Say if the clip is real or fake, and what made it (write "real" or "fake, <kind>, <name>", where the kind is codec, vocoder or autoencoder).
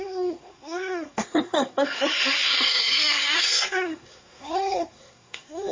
fake, codec, SNAC